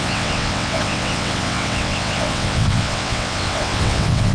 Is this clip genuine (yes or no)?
no